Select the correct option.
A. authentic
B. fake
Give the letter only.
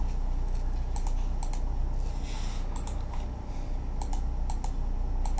A